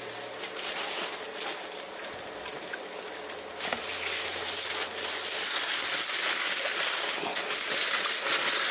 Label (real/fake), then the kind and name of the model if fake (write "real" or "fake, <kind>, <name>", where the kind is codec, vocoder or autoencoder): real